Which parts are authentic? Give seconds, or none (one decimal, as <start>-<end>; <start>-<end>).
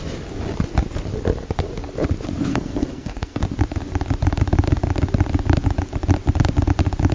0.0-2.5; 3.4-7.1